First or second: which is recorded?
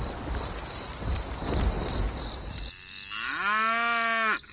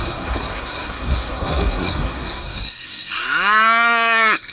first